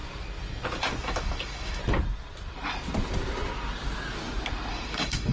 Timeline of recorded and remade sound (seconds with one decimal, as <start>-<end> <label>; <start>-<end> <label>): 0.0-1.0 recorded; 1.0-1.8 remade; 1.8-4.7 recorded; 4.7-5.3 remade